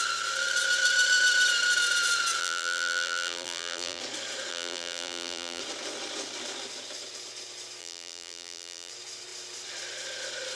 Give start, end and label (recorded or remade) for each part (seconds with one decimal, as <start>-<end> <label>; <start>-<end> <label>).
0.0-2.4 recorded; 2.4-4.0 remade; 4.0-4.5 recorded; 4.5-5.6 remade; 5.6-7.8 recorded; 7.8-8.9 remade; 8.9-10.6 recorded